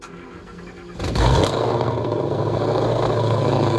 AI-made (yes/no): yes